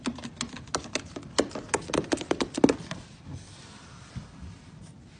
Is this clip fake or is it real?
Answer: real